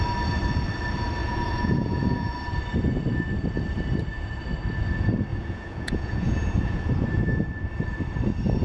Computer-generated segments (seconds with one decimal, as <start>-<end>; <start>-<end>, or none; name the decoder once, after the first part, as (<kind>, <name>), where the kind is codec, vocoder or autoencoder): 1.2-2.4 (vocoder, Vocos); 5.3-6.9